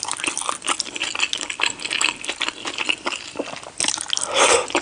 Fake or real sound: real